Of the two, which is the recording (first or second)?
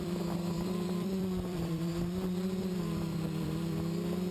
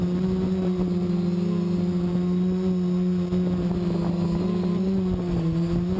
second